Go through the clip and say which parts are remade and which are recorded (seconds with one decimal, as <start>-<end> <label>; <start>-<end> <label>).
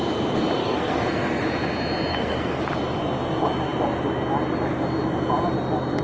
0.0-0.6 recorded; 0.6-1.4 remade; 1.4-2.1 recorded; 2.1-2.6 remade; 2.6-6.0 recorded